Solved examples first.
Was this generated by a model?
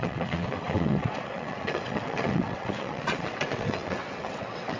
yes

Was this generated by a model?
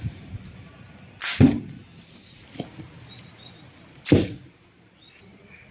no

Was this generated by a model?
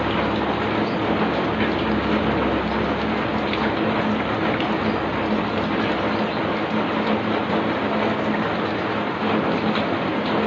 no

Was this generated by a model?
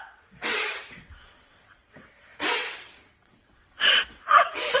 yes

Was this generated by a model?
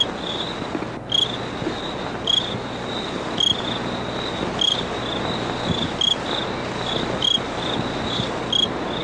no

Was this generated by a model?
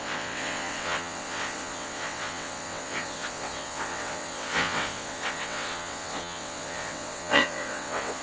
yes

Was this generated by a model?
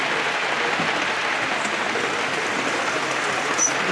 no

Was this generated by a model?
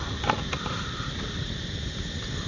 no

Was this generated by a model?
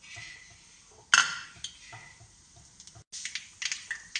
no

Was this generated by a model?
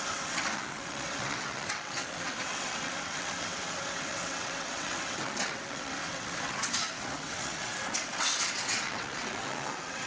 yes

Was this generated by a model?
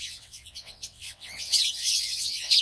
yes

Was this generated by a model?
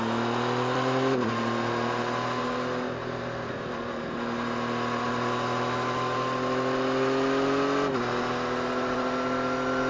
no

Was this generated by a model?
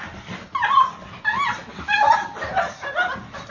no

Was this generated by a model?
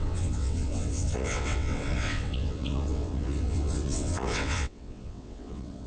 yes